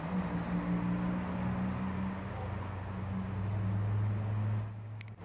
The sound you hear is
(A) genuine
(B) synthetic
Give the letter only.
A